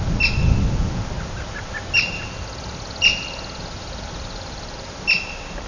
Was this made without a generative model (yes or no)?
yes